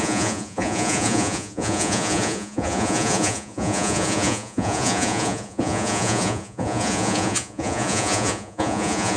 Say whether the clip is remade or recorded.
remade